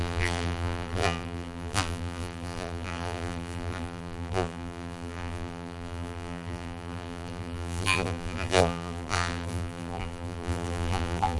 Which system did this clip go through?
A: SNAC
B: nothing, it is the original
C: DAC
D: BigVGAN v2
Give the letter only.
D